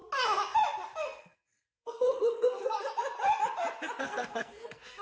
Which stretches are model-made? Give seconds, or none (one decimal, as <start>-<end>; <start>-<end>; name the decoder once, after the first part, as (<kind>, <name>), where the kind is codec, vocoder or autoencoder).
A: 1.0-2.8 (codec, SNAC); 4.0-5.0